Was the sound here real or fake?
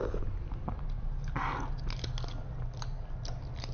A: real